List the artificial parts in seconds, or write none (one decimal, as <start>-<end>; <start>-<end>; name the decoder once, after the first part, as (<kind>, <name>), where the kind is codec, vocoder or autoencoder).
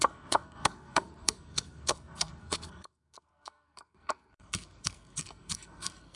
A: 0.0-6.2 (codec, SNAC)